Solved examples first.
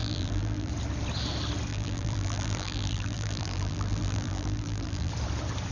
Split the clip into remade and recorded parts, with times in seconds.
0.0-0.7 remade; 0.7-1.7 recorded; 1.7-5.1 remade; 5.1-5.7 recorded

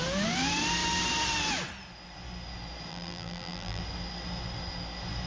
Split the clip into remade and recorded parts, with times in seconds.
0.0-2.9 recorded; 2.9-3.8 remade; 3.8-5.3 recorded

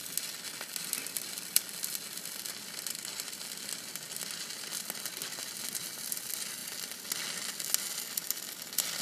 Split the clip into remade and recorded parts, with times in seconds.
0.0-9.0 recorded

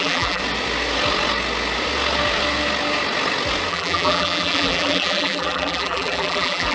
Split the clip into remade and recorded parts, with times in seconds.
0.0-0.4 remade; 0.4-3.7 recorded; 3.7-6.7 remade